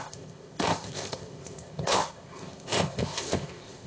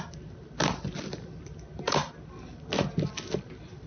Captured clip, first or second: second